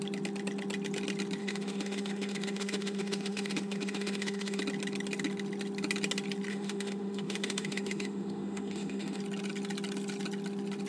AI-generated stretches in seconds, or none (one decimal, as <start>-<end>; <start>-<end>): 1.4-4.6; 6.5-9.2